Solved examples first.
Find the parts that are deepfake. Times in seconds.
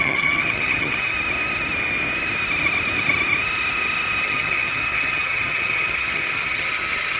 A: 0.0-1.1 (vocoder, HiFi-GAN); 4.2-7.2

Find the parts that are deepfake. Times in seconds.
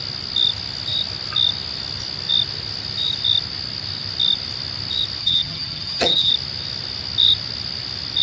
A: 5.2-6.3 (vocoder, HiFi-GAN)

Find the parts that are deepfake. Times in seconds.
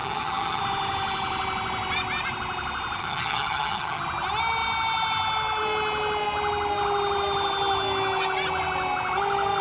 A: 0.0-0.6 (vocoder, HiFi-GAN); 3.0-4.0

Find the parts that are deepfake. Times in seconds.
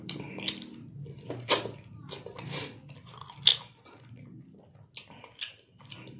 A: none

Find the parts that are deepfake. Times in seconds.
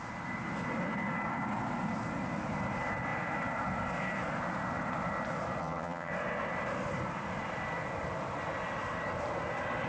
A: 5.6-6.1 (vocoder, HiFi-GAN)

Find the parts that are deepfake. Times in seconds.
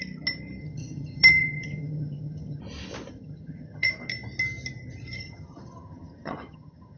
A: 0.6-2.6 (vocoder, HiFi-GAN); 3.1-3.9; 5.2-7.0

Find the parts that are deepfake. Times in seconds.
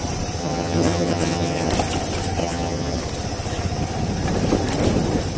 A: 0.4-1.7 (vocoder, HiFi-GAN); 2.4-3.0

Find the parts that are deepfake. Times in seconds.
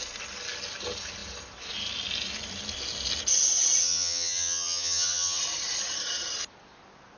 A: 3.8-5.4 (vocoder, HiFi-GAN)